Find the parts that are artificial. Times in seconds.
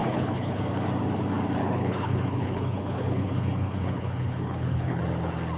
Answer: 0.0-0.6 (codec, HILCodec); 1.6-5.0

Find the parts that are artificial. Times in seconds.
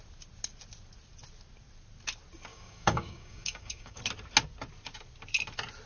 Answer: 2.5-4.0 (codec, DAC)